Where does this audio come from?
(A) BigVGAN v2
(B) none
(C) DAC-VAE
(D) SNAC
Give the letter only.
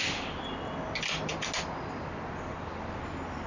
B